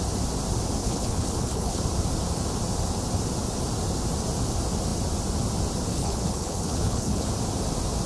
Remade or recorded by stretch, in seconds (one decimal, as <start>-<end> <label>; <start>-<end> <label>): 0.0-0.8 recorded; 0.8-1.8 remade; 1.8-5.9 recorded; 5.9-7.3 remade; 7.3-8.1 recorded